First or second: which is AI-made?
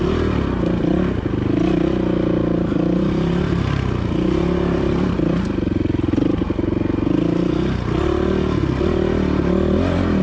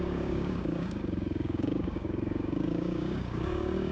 second